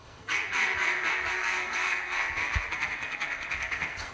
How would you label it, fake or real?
fake